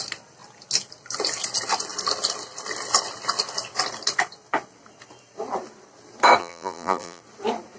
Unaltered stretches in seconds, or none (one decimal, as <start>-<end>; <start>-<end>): 0.0-6.4; 7.2-7.8